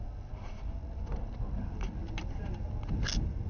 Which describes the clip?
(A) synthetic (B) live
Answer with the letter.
B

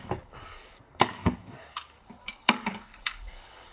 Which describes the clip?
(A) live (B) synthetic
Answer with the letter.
B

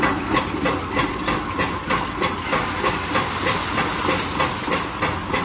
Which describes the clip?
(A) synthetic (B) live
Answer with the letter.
B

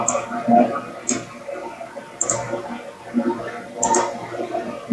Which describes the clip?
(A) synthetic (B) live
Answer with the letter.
B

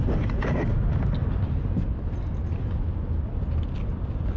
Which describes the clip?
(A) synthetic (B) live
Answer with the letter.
B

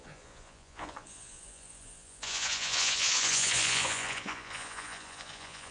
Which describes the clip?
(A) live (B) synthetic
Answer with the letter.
B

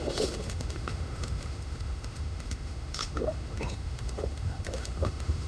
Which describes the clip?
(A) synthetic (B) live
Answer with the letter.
A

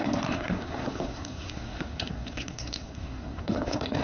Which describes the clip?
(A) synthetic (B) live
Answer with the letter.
A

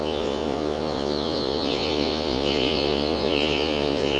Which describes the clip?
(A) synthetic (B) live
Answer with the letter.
A